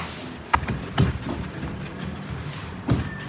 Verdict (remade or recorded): remade